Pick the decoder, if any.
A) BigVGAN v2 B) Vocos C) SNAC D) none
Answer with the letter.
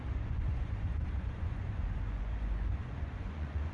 B